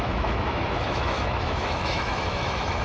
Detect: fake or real fake